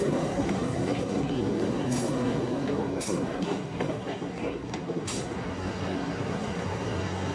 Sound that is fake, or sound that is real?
fake